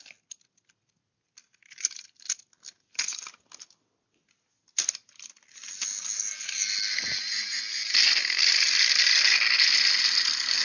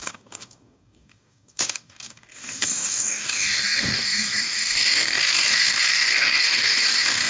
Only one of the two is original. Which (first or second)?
first